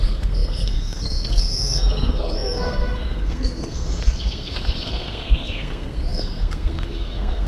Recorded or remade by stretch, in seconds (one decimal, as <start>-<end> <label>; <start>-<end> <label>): 0.0-7.5 remade